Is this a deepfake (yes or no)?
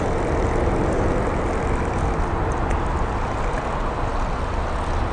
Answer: no